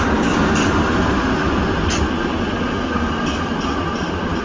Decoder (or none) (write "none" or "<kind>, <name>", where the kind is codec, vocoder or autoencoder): none